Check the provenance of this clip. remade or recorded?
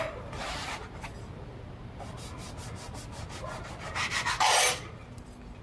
recorded